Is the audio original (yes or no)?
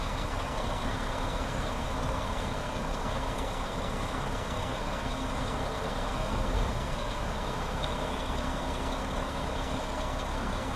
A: no